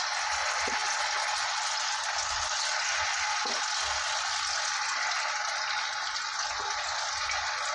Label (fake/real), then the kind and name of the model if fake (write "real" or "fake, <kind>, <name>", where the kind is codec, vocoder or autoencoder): real